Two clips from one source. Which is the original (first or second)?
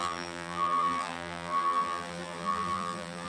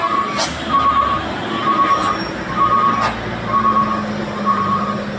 second